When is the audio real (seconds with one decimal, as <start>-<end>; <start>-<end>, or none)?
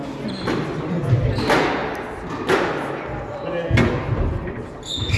0.0-5.2